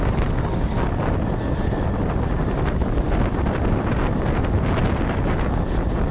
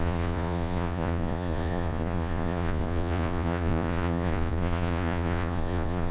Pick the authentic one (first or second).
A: first